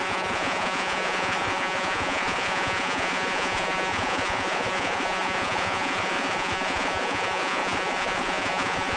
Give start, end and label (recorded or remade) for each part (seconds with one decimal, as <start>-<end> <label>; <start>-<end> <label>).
0.0-9.0 remade

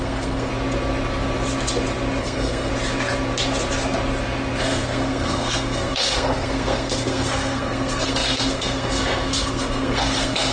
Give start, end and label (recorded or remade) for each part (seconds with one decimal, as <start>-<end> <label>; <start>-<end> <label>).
0.0-0.5 remade; 0.5-2.2 recorded; 2.2-2.7 remade; 2.7-4.6 recorded; 4.6-10.5 remade

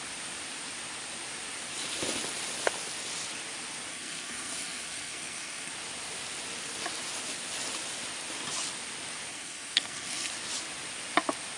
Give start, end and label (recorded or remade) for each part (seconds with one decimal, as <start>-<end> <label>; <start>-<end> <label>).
0.0-3.9 recorded; 3.9-5.7 remade; 5.7-9.3 recorded; 9.3-10.3 remade; 10.3-11.6 recorded

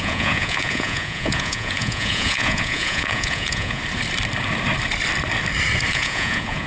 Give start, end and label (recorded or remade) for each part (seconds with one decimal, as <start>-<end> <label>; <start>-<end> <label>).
0.0-3.8 remade; 3.8-5.9 recorded; 5.9-6.7 remade

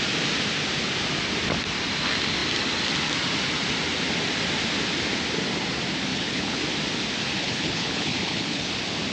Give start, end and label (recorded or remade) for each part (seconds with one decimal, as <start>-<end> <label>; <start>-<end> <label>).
0.0-6.1 recorded; 6.1-6.6 remade; 6.6-7.4 recorded; 7.4-8.7 remade; 8.7-9.1 recorded

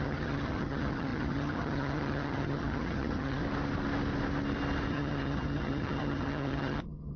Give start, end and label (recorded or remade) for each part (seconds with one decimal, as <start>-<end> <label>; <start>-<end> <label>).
0.0-3.4 remade; 3.4-4.9 recorded; 4.9-7.2 remade